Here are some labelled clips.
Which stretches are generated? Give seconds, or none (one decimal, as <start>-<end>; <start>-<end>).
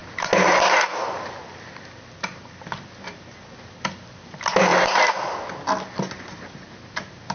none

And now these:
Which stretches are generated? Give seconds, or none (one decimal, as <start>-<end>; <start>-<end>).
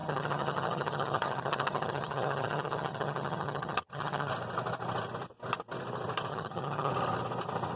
0.0-4.3; 6.3-6.9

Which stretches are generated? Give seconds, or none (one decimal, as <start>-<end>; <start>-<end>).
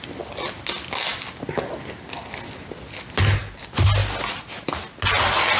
none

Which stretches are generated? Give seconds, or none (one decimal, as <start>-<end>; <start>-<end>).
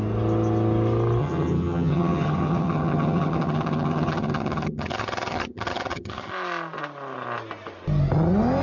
1.2-6.3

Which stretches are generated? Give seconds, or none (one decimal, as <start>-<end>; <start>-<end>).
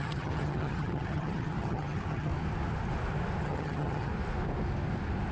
0.0-2.3; 3.4-4.1